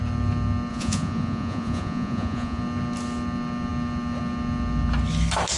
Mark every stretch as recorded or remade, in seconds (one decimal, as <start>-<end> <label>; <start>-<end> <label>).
0.0-0.7 recorded; 0.7-2.6 remade; 2.6-5.6 recorded